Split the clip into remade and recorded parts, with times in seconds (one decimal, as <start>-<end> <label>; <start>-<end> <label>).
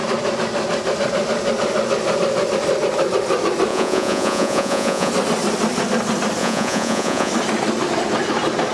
0.0-3.7 recorded; 3.7-5.1 remade; 5.1-6.4 recorded; 6.4-7.3 remade; 7.3-8.7 recorded